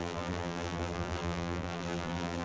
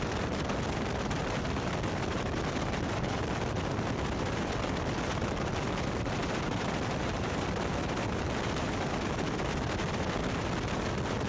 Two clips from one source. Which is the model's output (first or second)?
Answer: first